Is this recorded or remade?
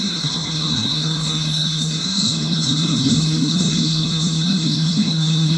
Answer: remade